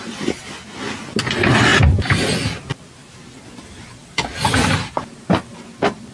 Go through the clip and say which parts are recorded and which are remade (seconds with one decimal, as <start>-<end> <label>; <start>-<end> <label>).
0.0-4.0 recorded; 4.0-4.5 remade; 4.5-6.1 recorded

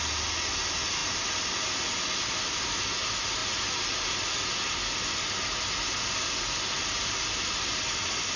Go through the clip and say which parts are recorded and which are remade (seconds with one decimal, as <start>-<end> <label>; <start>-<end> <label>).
0.0-1.0 recorded; 1.0-2.8 remade; 2.8-3.4 recorded; 3.4-4.3 remade; 4.3-8.4 recorded

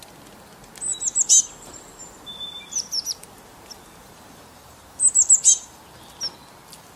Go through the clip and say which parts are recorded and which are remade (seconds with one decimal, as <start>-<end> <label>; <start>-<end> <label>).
0.0-2.0 recorded; 2.0-5.8 remade; 5.8-7.0 recorded

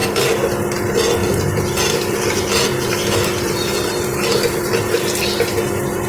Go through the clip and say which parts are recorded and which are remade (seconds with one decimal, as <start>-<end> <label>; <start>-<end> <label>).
0.0-1.2 recorded; 1.2-4.9 remade; 4.9-6.1 recorded